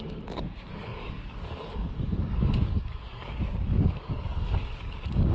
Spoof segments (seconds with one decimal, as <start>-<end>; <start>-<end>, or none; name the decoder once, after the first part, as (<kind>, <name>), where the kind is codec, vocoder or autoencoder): 0.0-5.3 (codec, DAC)